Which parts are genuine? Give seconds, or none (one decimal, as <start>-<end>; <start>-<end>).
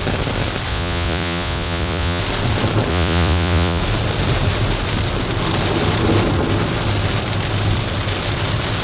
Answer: 0.0-0.7; 2.2-2.9; 3.8-8.8